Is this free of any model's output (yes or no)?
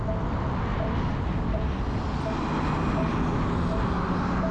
yes